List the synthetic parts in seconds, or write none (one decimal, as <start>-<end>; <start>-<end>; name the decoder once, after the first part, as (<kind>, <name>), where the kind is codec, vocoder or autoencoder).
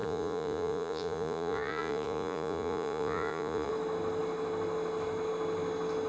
0.0-3.7 (vocoder, Vocos)